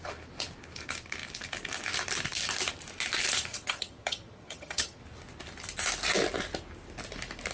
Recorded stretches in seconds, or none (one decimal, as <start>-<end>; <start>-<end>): 0.0-3.5; 5.0-7.5